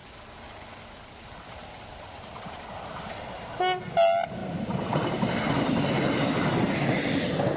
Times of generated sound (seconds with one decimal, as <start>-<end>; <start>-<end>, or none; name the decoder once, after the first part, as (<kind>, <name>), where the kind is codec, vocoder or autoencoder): 0.0-2.6 (vocoder, BigVGAN v2); 4.4-5.3